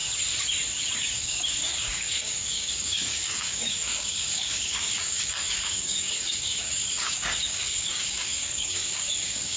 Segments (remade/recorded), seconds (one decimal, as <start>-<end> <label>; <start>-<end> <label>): 0.0-1.0 recorded; 1.0-9.6 remade